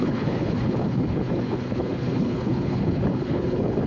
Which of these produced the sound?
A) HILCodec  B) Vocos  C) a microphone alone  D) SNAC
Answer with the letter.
A